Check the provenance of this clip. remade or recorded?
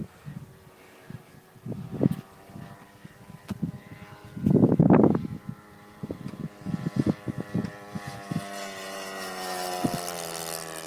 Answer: recorded